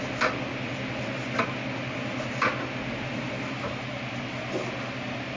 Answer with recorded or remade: recorded